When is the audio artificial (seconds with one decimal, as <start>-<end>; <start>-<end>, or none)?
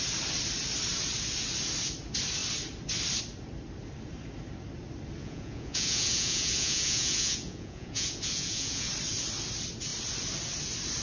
5.2-8.9